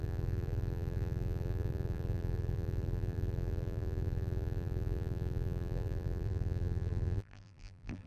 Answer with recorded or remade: remade